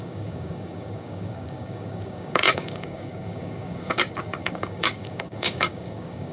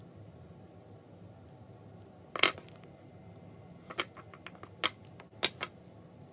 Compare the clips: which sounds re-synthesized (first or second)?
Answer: first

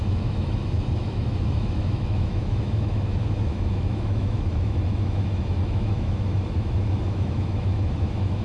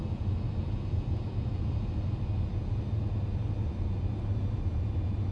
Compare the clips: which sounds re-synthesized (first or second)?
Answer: first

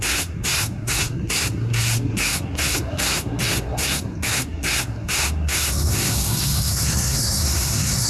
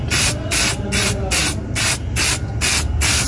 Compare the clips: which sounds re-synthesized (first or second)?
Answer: first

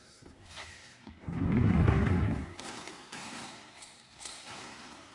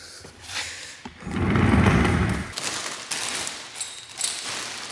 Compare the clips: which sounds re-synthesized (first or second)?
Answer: first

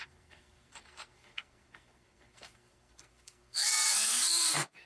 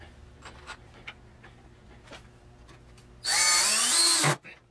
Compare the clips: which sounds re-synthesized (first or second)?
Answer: first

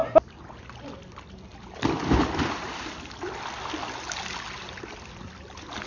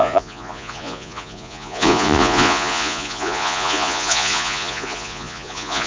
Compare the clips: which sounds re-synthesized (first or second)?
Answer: second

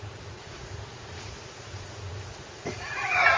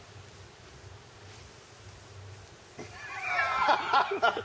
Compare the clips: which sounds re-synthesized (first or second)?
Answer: first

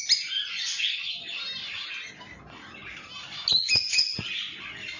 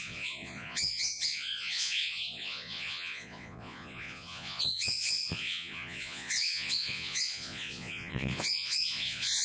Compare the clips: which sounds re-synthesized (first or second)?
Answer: second